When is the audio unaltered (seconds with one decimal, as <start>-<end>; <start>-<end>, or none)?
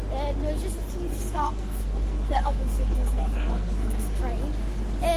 0.0-1.1; 4.2-5.2